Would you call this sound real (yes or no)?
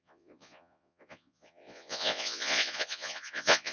no